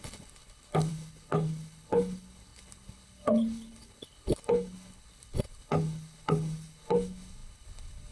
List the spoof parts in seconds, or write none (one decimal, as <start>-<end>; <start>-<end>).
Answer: 0.0-8.1